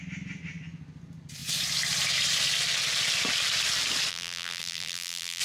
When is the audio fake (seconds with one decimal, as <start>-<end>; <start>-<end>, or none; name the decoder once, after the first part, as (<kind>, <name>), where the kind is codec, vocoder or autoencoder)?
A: 4.1-5.4 (vocoder, BigVGAN v2)

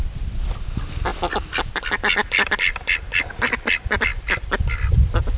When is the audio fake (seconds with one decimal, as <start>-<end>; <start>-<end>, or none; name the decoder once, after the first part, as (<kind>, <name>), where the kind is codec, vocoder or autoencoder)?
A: 1.1-2.0 (vocoder, BigVGAN v2)

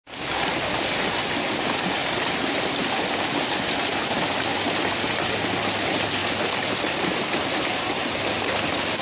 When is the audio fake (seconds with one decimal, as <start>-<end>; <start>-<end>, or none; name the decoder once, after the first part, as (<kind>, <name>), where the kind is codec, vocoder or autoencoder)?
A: 2.0-4.8 (vocoder, BigVGAN v2); 6.2-9.0

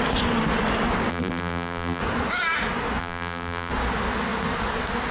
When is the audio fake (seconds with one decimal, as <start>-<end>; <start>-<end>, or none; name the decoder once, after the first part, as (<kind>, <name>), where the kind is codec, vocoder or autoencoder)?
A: 1.1-2.0 (vocoder, BigVGAN v2); 3.0-3.7

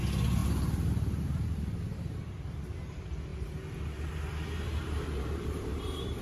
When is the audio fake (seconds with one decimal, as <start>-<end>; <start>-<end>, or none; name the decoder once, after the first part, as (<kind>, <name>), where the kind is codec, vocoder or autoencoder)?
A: 0.4-2.2 (vocoder, BigVGAN v2); 3.3-4.1; 4.8-6.2